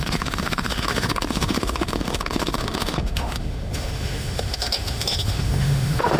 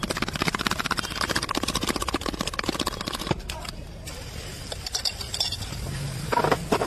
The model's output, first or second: first